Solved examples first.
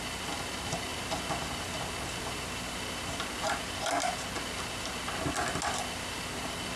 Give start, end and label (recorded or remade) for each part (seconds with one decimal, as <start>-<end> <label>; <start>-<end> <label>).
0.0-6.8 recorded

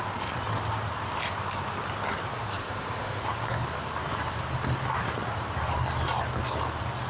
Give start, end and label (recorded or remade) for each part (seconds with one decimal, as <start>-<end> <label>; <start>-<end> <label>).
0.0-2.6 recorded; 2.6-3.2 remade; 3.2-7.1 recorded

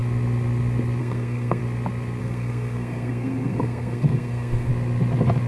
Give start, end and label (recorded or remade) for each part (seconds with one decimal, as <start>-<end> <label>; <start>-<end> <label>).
0.0-1.0 recorded; 1.0-1.6 remade; 1.6-2.2 recorded; 2.2-4.7 remade; 4.7-5.5 recorded

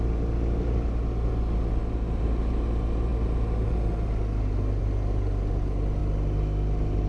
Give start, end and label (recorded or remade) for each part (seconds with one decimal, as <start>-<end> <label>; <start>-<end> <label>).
0.0-7.1 recorded